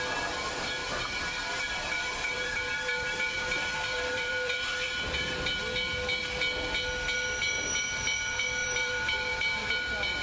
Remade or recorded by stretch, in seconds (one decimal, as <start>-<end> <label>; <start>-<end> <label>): 0.0-0.8 recorded; 0.8-5.6 remade; 5.6-8.6 recorded; 8.6-9.7 remade; 9.7-10.2 recorded